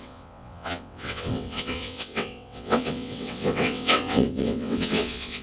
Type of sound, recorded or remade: remade